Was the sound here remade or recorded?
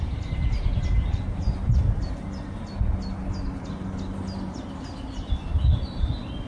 recorded